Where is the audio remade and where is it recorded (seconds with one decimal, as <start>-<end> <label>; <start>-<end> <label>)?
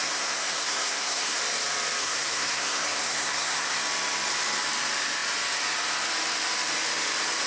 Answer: 0.0-1.4 remade; 1.4-2.0 recorded; 2.0-3.8 remade; 3.8-7.5 recorded